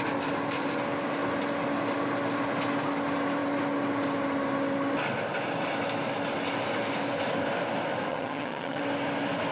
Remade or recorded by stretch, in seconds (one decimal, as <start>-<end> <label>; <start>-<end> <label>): 0.0-8.1 recorded; 8.1-8.8 remade; 8.8-9.5 recorded